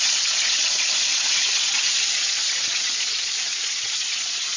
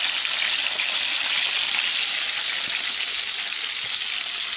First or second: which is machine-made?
first